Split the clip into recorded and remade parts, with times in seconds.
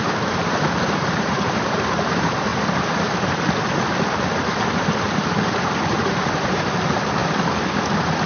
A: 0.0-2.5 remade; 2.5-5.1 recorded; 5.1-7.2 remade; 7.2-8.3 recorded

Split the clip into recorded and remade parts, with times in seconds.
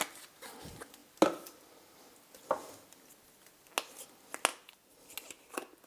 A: 0.0-5.9 recorded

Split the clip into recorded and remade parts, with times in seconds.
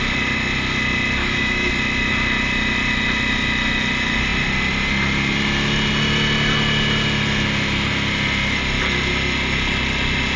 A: 0.0-1.2 recorded; 1.2-1.7 remade; 1.7-10.4 recorded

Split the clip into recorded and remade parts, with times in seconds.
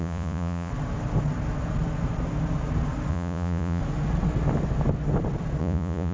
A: 0.0-0.7 remade; 0.7-3.1 recorded; 3.1-3.8 remade; 3.8-5.6 recorded; 5.6-6.1 remade